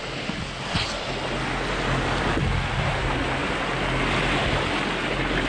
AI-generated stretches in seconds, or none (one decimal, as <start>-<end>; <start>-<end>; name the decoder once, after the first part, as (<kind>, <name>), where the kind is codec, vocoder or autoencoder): none